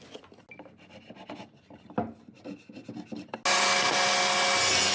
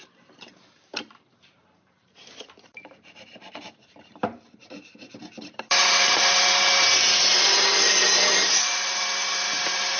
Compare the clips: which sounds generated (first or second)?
second